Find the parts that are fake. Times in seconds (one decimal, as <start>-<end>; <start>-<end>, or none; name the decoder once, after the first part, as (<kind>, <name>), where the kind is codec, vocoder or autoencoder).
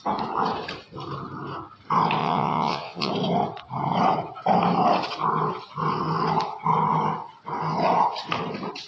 2.2-3.1 (vocoder, WaveNeXt)